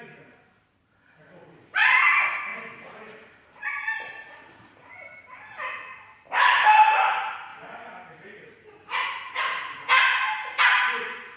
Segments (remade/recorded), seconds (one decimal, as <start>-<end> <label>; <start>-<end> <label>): 0.0-11.4 recorded